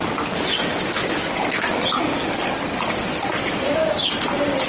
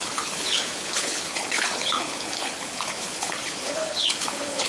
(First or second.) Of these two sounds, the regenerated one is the second